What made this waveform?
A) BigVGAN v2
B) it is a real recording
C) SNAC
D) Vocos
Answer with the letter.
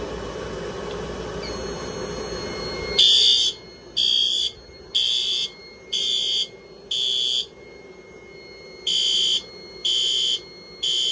B